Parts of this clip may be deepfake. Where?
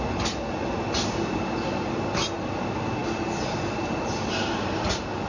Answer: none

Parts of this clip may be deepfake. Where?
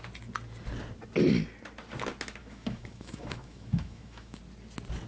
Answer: 2.4-4.4 (autoencoder, DAC-VAE)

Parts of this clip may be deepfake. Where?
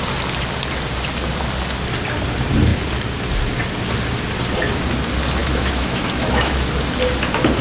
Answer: 5.4-6.7 (autoencoder, DAC-VAE)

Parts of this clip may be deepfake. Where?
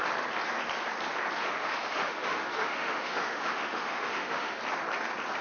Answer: 1.4-4.6 (autoencoder, DAC-VAE)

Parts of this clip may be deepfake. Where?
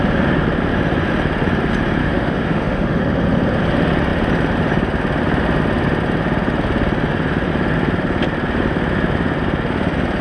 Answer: 2.0-3.0 (autoencoder, DAC-VAE)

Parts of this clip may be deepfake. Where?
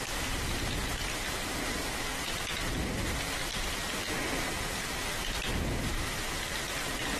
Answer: none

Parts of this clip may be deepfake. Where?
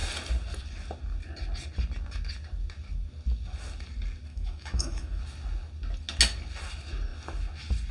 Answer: 4.3-5.2 (autoencoder, DAC-VAE)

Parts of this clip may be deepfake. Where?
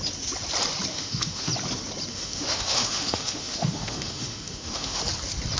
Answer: 0.9-1.5 (autoencoder, DAC-VAE); 2.1-5.0